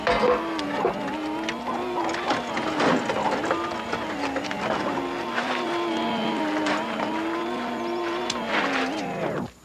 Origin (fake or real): real